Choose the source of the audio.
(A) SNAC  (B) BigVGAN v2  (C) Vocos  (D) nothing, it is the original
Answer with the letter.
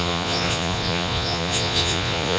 C